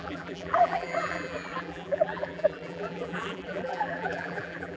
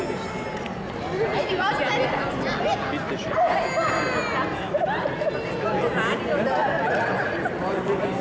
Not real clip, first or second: first